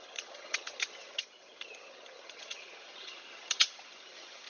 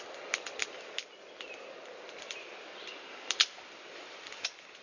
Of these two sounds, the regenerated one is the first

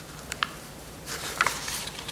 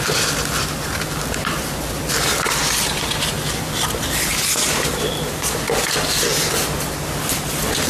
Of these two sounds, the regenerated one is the first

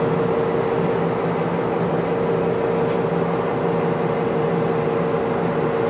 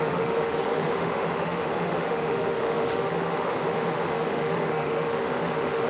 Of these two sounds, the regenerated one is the second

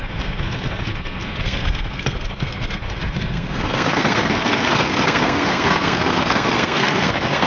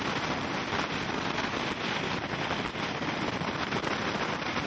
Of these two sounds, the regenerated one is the first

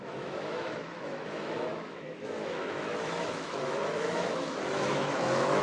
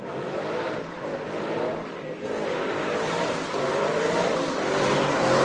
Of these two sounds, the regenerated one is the first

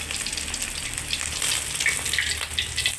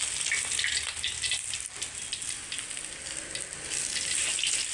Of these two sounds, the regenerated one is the second